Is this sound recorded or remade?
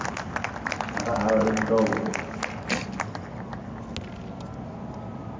recorded